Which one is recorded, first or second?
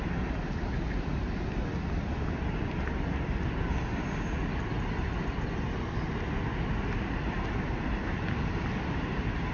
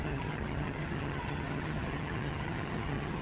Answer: first